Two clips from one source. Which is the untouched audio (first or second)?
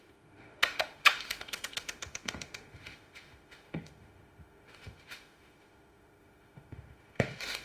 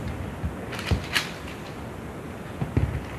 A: second